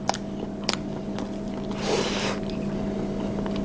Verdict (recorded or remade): recorded